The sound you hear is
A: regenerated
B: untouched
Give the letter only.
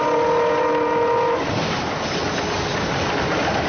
B